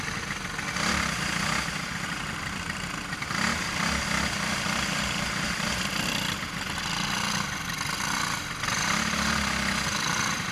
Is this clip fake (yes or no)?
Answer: no